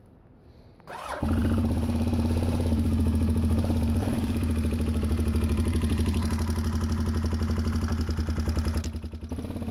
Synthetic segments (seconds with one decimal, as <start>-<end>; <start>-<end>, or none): 1.4-6.3